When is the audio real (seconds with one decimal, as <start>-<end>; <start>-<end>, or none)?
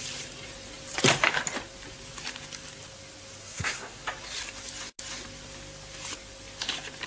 0.0-3.4; 4.0-7.1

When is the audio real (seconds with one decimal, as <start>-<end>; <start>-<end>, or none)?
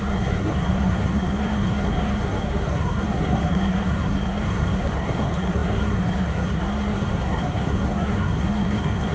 none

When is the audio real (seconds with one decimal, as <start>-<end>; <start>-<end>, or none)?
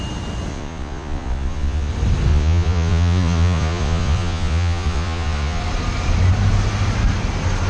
0.0-0.5; 1.9-2.3; 5.6-7.7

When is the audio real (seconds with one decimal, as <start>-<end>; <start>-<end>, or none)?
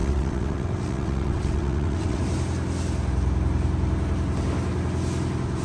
2.2-5.6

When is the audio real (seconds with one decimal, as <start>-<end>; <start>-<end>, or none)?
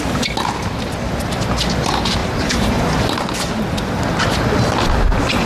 0.0-5.5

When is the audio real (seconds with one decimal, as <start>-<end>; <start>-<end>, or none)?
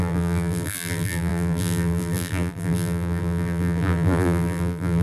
none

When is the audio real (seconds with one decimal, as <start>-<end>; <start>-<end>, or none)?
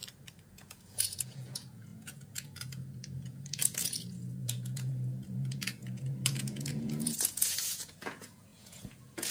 0.0-0.5